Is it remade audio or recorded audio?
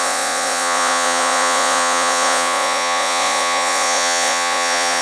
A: remade